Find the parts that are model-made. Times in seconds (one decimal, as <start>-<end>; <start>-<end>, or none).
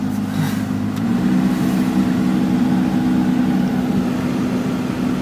none